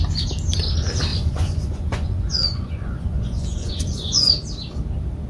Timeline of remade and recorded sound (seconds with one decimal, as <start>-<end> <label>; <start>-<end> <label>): 0.0-1.1 recorded; 1.1-4.3 remade; 4.3-5.3 recorded